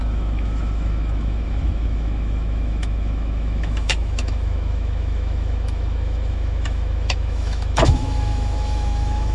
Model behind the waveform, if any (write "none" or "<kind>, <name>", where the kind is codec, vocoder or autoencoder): autoencoder, DAC-VAE